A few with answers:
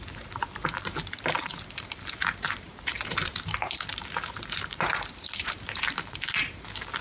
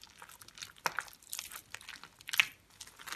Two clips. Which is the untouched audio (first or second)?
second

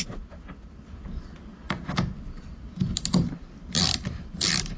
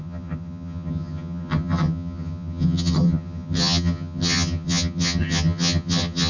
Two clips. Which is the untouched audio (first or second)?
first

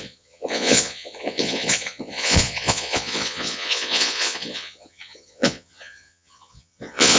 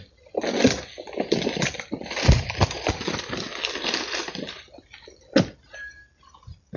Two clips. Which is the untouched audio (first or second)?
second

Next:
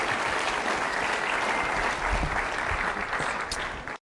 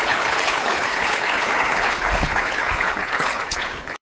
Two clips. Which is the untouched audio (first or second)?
first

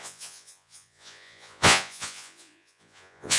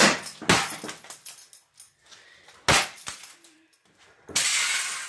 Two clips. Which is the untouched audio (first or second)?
second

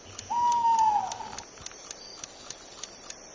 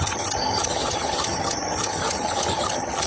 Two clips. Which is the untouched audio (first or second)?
first